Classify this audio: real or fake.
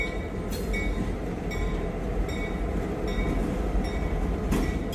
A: real